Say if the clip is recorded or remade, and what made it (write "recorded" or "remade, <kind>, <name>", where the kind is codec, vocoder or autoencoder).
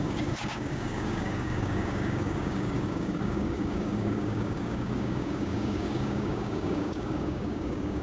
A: remade, codec, DAC